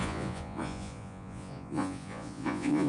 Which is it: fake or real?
fake